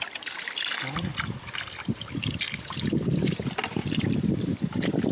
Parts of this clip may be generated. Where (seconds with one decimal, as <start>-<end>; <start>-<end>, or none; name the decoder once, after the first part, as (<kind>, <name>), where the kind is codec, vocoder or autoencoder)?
1.1-3.3 (vocoder, BigVGAN v2)